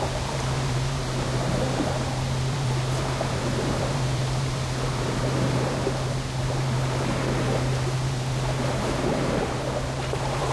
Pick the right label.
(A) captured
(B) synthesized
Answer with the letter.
B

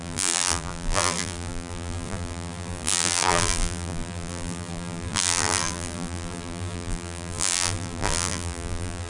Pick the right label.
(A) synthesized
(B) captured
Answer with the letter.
A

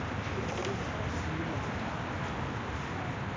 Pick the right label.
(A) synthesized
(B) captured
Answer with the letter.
B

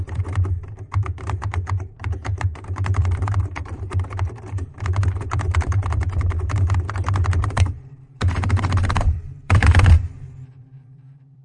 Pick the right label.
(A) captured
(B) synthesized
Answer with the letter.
B